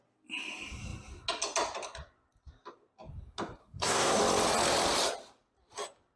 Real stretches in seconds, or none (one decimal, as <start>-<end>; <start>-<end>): 0.0-3.6; 4.2-6.2